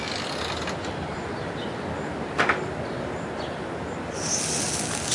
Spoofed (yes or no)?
no